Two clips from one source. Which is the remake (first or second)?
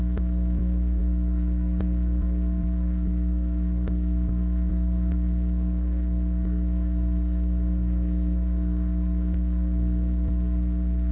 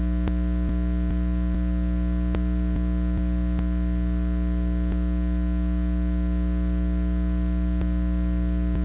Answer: first